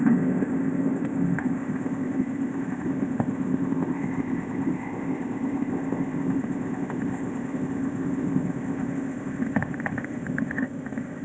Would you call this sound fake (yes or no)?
yes